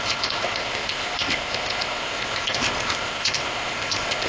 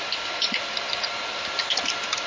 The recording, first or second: second